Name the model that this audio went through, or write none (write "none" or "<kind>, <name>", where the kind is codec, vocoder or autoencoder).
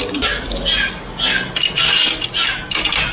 none